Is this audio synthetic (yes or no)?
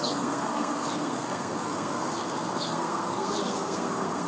yes